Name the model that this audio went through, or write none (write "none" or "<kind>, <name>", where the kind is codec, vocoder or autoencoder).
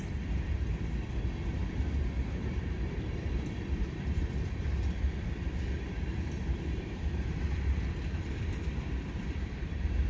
vocoder, BigVGAN v2